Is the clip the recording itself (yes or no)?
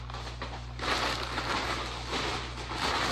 yes